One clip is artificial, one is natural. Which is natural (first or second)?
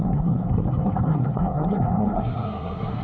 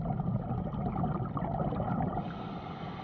second